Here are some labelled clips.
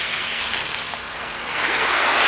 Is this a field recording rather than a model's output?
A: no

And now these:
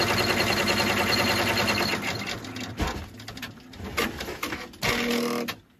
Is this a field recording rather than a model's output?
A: yes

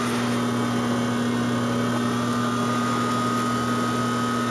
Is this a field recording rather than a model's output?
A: yes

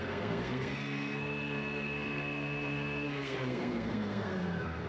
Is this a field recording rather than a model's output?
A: no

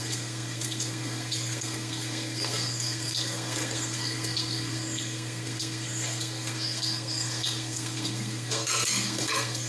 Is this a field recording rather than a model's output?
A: no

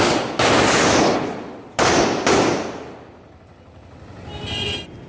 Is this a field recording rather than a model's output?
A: yes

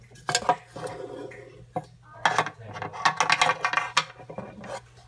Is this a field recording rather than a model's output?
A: yes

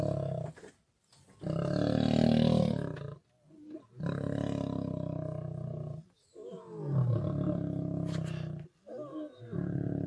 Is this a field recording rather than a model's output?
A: yes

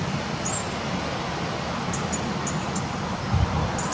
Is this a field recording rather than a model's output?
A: yes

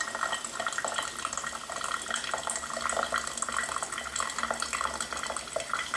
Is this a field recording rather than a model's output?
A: yes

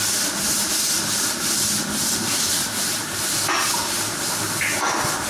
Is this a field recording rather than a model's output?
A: yes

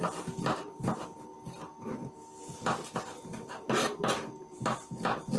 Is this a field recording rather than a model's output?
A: yes